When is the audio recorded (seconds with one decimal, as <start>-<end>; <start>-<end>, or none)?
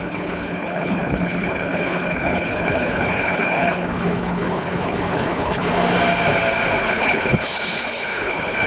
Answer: 5.7-6.8